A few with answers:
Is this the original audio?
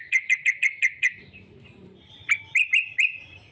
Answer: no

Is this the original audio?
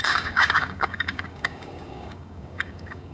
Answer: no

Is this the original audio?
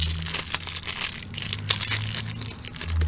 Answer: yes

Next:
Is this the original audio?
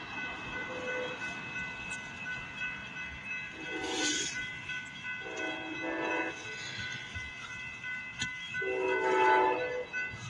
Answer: yes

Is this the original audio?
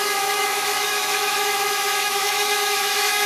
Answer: no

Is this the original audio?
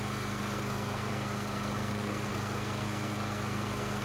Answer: no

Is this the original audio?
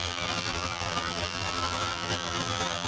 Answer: no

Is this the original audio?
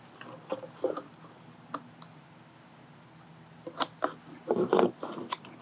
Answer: yes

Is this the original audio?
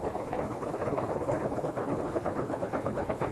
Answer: no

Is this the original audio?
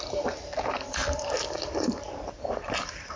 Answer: no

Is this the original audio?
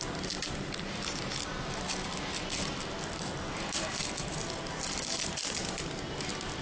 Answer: yes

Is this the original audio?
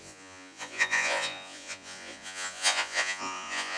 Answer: no